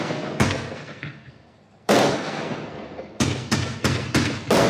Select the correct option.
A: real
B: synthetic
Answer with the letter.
B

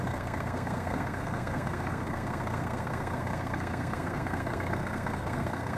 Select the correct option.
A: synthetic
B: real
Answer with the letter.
A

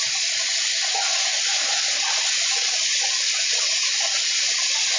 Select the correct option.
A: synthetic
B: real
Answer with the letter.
B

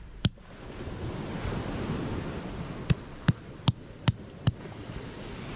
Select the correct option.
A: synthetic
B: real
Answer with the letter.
B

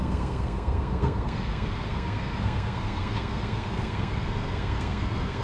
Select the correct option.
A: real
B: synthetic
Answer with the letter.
B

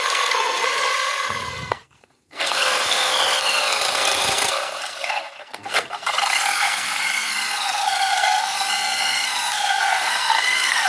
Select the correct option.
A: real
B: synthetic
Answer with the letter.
B